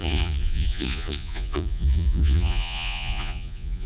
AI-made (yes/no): yes